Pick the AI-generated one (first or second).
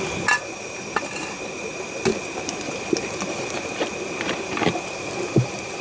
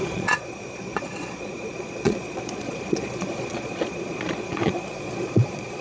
second